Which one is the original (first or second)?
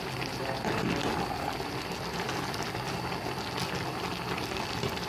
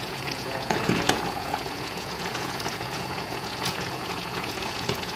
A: first